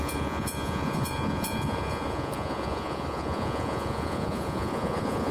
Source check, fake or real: fake